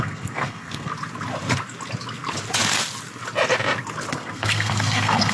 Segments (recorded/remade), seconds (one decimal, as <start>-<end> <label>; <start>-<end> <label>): 0.0-0.9 remade; 0.9-4.1 recorded; 4.1-5.3 remade